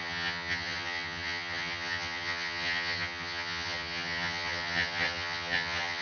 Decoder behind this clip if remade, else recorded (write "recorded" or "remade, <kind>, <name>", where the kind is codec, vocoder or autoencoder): remade, vocoder, HiFi-GAN